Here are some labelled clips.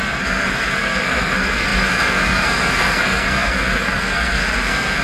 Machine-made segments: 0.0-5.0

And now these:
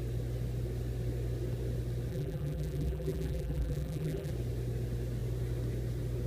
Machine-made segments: 2.1-4.3

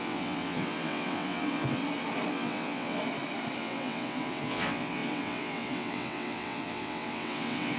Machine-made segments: 0.0-1.8; 2.3-3.0; 3.6-7.8

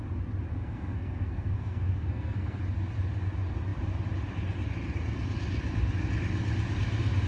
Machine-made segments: 0.5-2.6

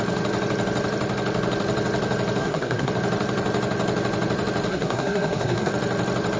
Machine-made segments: 2.4-2.9; 4.7-5.7

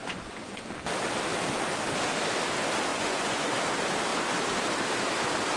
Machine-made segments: 0.0-0.6; 2.9-3.5

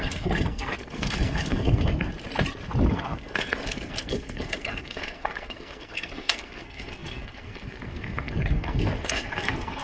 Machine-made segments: 0.0-2.1; 2.9-9.8

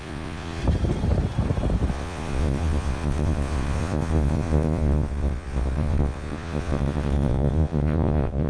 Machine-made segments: 0.0-0.6; 1.9-8.5